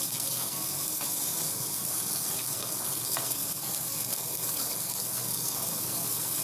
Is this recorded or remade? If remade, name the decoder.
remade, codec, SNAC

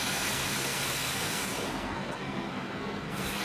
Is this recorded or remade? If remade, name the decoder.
remade, codec, SNAC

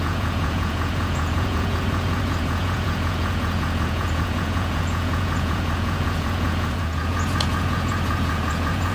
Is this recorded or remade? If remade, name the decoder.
remade, vocoder, Vocos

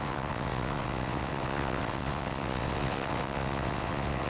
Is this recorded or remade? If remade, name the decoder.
remade, vocoder, WaveNeXt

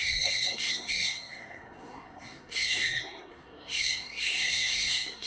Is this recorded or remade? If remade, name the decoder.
remade, codec, SNAC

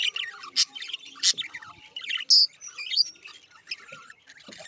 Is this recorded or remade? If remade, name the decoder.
recorded